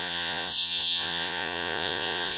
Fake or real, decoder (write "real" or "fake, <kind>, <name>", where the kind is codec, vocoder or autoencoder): fake, vocoder, Vocos